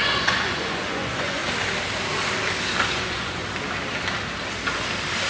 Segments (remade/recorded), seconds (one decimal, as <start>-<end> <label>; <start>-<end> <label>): 0.0-1.4 remade; 1.4-2.9 recorded; 2.9-3.4 remade; 3.4-5.3 recorded